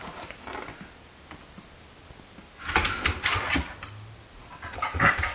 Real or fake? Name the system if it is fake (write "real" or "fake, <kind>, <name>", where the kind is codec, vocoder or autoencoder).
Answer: real